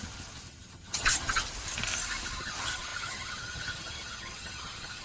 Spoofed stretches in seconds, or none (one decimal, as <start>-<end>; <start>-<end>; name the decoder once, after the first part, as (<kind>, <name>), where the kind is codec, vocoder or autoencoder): 0.0-1.4 (vocoder, HiFi-GAN); 2.4-5.0